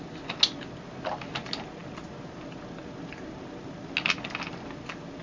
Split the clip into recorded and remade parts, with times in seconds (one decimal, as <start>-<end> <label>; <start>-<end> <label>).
0.0-5.2 recorded